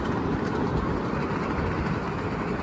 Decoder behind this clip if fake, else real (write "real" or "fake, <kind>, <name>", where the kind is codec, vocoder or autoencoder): real